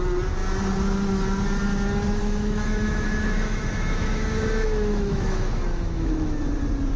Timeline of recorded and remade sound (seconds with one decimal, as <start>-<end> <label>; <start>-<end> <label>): 0.0-2.2 recorded; 2.2-6.4 remade; 6.4-7.0 recorded